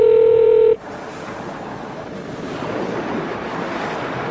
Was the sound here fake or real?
fake